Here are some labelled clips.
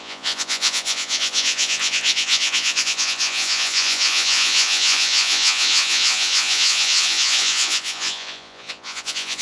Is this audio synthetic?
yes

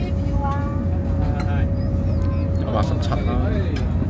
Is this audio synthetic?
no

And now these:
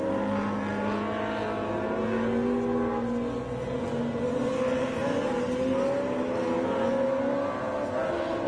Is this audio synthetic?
no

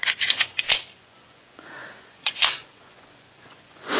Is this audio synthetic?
yes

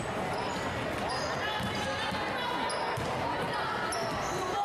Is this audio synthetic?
no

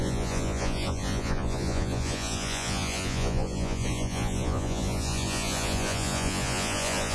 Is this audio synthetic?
yes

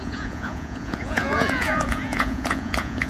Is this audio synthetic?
yes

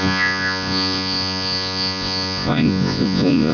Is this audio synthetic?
yes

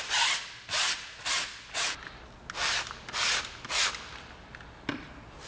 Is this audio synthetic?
no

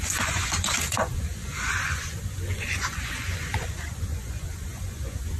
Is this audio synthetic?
yes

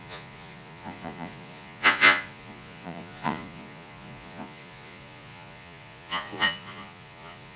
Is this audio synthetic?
yes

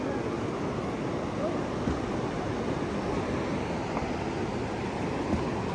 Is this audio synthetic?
no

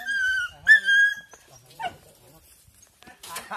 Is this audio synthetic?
no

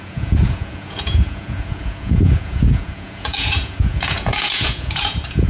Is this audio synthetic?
yes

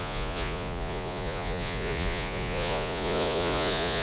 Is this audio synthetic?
yes